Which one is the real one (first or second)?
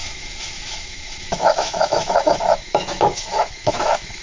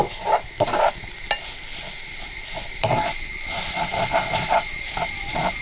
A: second